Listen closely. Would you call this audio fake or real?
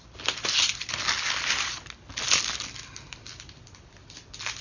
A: real